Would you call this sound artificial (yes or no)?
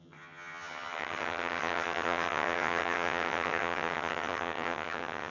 yes